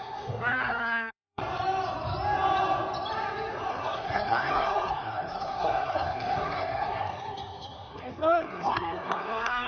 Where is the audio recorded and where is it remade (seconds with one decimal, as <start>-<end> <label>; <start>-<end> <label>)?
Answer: 0.0-1.4 remade; 1.4-3.7 recorded; 3.7-9.7 remade

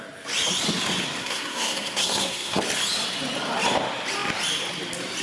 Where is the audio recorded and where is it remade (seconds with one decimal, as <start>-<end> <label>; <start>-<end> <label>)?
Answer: 0.0-1.2 recorded; 1.2-2.6 remade; 2.6-5.2 recorded

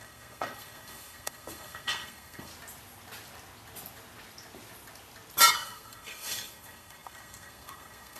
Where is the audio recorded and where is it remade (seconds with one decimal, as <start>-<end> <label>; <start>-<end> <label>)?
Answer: 0.0-2.5 remade; 2.5-5.5 recorded; 5.5-8.2 remade

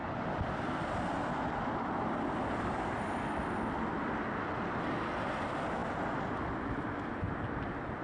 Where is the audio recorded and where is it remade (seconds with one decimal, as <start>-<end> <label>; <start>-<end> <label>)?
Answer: 0.0-8.0 recorded